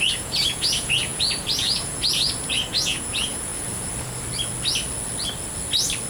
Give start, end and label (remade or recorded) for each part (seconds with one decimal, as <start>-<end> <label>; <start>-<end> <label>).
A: 0.0-3.5 remade; 3.5-6.1 recorded